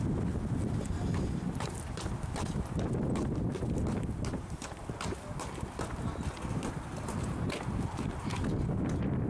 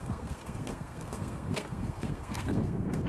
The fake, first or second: second